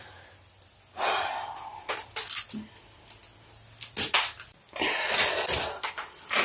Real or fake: real